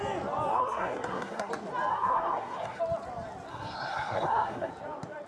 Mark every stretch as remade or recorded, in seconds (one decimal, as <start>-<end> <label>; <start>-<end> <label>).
0.0-0.5 recorded; 0.5-1.5 remade; 1.5-1.9 recorded; 1.9-2.8 remade; 2.8-3.5 recorded; 3.5-4.7 remade; 4.7-5.3 recorded